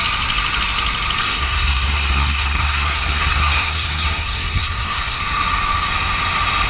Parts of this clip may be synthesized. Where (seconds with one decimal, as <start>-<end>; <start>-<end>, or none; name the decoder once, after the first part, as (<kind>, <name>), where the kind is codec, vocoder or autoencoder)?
1.2-5.2 (codec, SNAC)